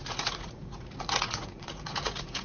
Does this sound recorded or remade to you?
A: remade